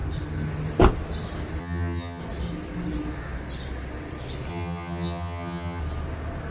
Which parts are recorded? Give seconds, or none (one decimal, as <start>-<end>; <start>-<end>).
0.0-1.6; 2.2-4.5; 5.8-6.5